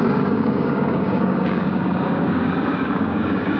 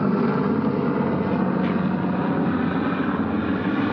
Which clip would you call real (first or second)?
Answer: second